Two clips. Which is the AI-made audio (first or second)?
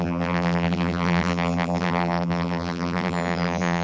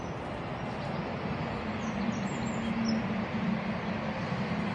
first